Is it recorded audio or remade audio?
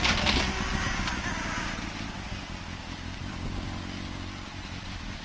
recorded